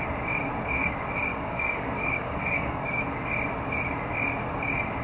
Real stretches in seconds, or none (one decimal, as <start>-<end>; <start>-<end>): 0.0-1.3; 3.0-5.0